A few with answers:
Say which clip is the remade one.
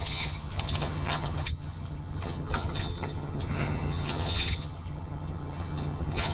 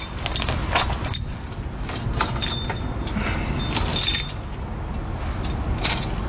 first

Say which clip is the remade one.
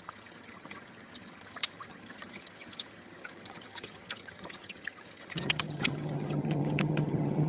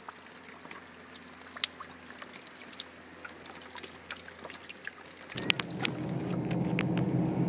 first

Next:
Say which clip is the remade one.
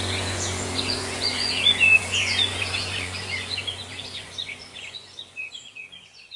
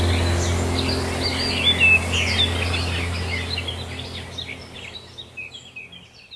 first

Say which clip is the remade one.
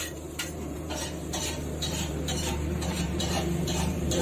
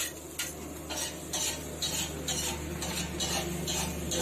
first